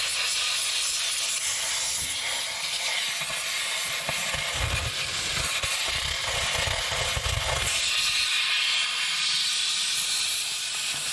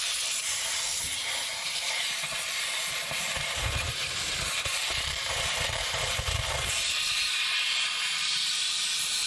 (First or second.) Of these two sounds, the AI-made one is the second